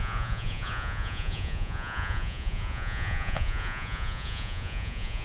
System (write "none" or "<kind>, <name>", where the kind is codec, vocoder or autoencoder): vocoder, Vocos